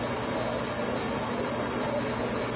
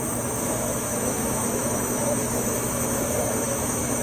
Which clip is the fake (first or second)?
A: second